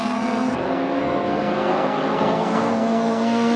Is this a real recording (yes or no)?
no